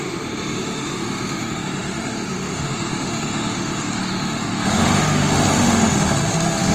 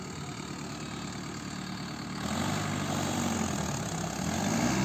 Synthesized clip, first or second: first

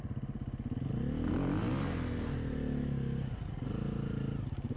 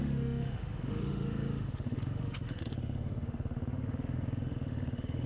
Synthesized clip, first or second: second